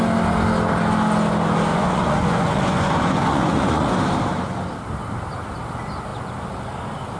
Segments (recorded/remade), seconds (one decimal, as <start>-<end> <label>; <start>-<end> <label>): 0.0-1.7 recorded; 1.7-3.9 remade; 3.9-7.2 recorded